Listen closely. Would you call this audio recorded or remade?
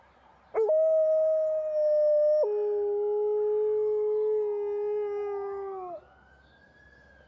recorded